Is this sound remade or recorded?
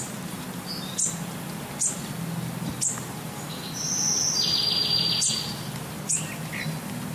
recorded